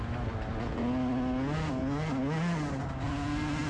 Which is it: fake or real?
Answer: real